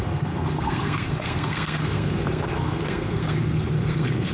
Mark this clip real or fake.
fake